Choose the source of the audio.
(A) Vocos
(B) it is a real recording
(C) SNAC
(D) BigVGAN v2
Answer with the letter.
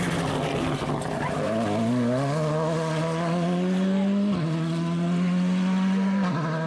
B